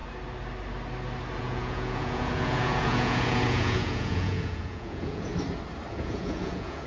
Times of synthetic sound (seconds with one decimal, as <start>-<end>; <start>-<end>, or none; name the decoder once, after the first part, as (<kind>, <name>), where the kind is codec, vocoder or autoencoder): 1.4-5.3 (vocoder, Vocos); 5.9-6.9